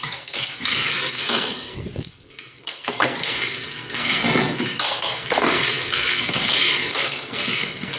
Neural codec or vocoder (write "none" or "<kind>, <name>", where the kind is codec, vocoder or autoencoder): codec, SNAC